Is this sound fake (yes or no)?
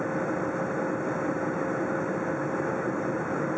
no